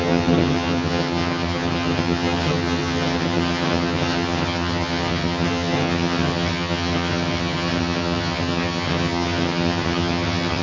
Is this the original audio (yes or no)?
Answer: no